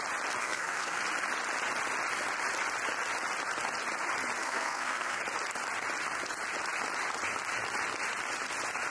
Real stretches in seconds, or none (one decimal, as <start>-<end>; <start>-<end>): 0.0-0.4; 1.0-4.4; 5.2-8.9